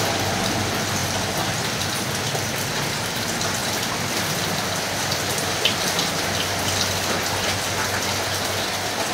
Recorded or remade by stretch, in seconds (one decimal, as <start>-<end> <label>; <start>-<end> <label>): 0.0-1.0 recorded; 1.0-1.8 remade; 1.8-3.6 recorded; 3.6-6.6 remade; 6.6-9.1 recorded